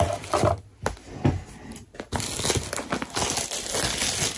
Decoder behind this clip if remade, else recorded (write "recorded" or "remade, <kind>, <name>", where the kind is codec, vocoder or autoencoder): recorded